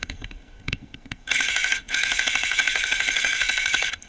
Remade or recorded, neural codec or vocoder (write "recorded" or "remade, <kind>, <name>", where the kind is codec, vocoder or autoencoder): remade, codec, SNAC